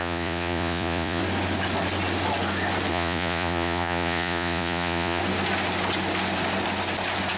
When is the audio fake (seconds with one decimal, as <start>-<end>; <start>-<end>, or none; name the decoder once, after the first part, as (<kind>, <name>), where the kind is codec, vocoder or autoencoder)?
0.0-1.2 (vocoder, Vocos); 2.9-5.2